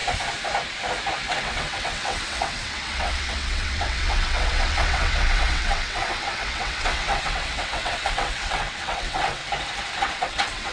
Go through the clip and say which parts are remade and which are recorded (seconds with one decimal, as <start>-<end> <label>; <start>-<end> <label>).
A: 0.0-1.3 recorded; 1.3-9.4 remade; 9.4-10.0 recorded; 10.0-10.7 remade